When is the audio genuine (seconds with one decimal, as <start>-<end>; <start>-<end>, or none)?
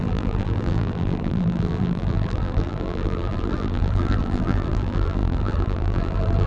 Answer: none